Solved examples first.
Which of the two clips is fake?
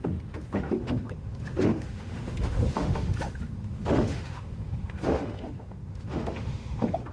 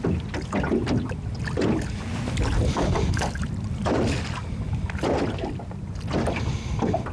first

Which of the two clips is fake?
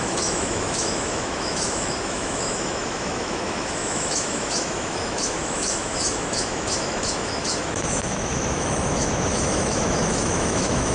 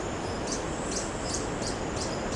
first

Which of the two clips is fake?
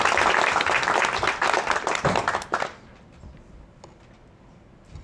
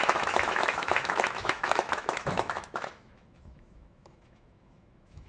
second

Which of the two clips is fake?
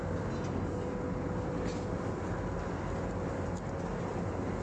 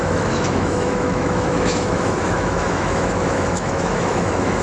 second